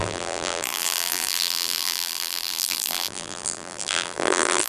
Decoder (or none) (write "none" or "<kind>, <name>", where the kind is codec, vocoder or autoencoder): vocoder, BigVGAN v2